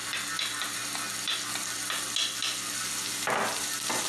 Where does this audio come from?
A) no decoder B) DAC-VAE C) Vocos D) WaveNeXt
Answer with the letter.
A